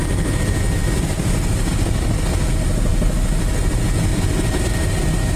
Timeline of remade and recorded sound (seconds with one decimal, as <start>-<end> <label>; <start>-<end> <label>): 0.0-0.8 recorded; 0.8-1.8 remade; 1.8-4.1 recorded; 4.1-4.6 remade; 4.6-5.4 recorded